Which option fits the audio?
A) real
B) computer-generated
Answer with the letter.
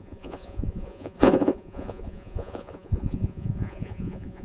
B